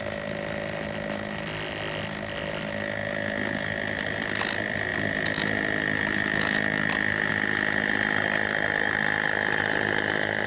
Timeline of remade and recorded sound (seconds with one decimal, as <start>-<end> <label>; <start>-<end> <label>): 0.0-10.5 recorded